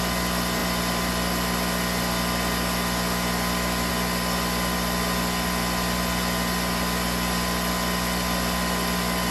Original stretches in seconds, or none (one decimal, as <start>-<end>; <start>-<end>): 0.0-9.3